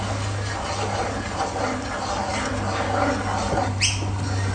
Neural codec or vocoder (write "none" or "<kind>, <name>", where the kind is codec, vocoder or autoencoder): none